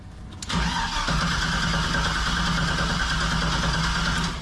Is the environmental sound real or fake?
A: real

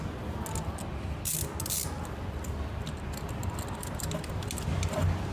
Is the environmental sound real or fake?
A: real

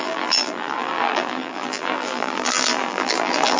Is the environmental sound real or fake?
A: fake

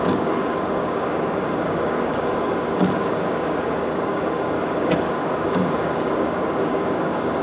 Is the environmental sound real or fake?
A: fake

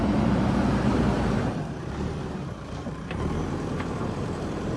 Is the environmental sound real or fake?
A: fake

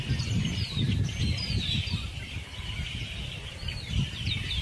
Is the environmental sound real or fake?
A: real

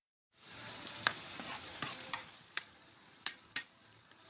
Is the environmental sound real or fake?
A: fake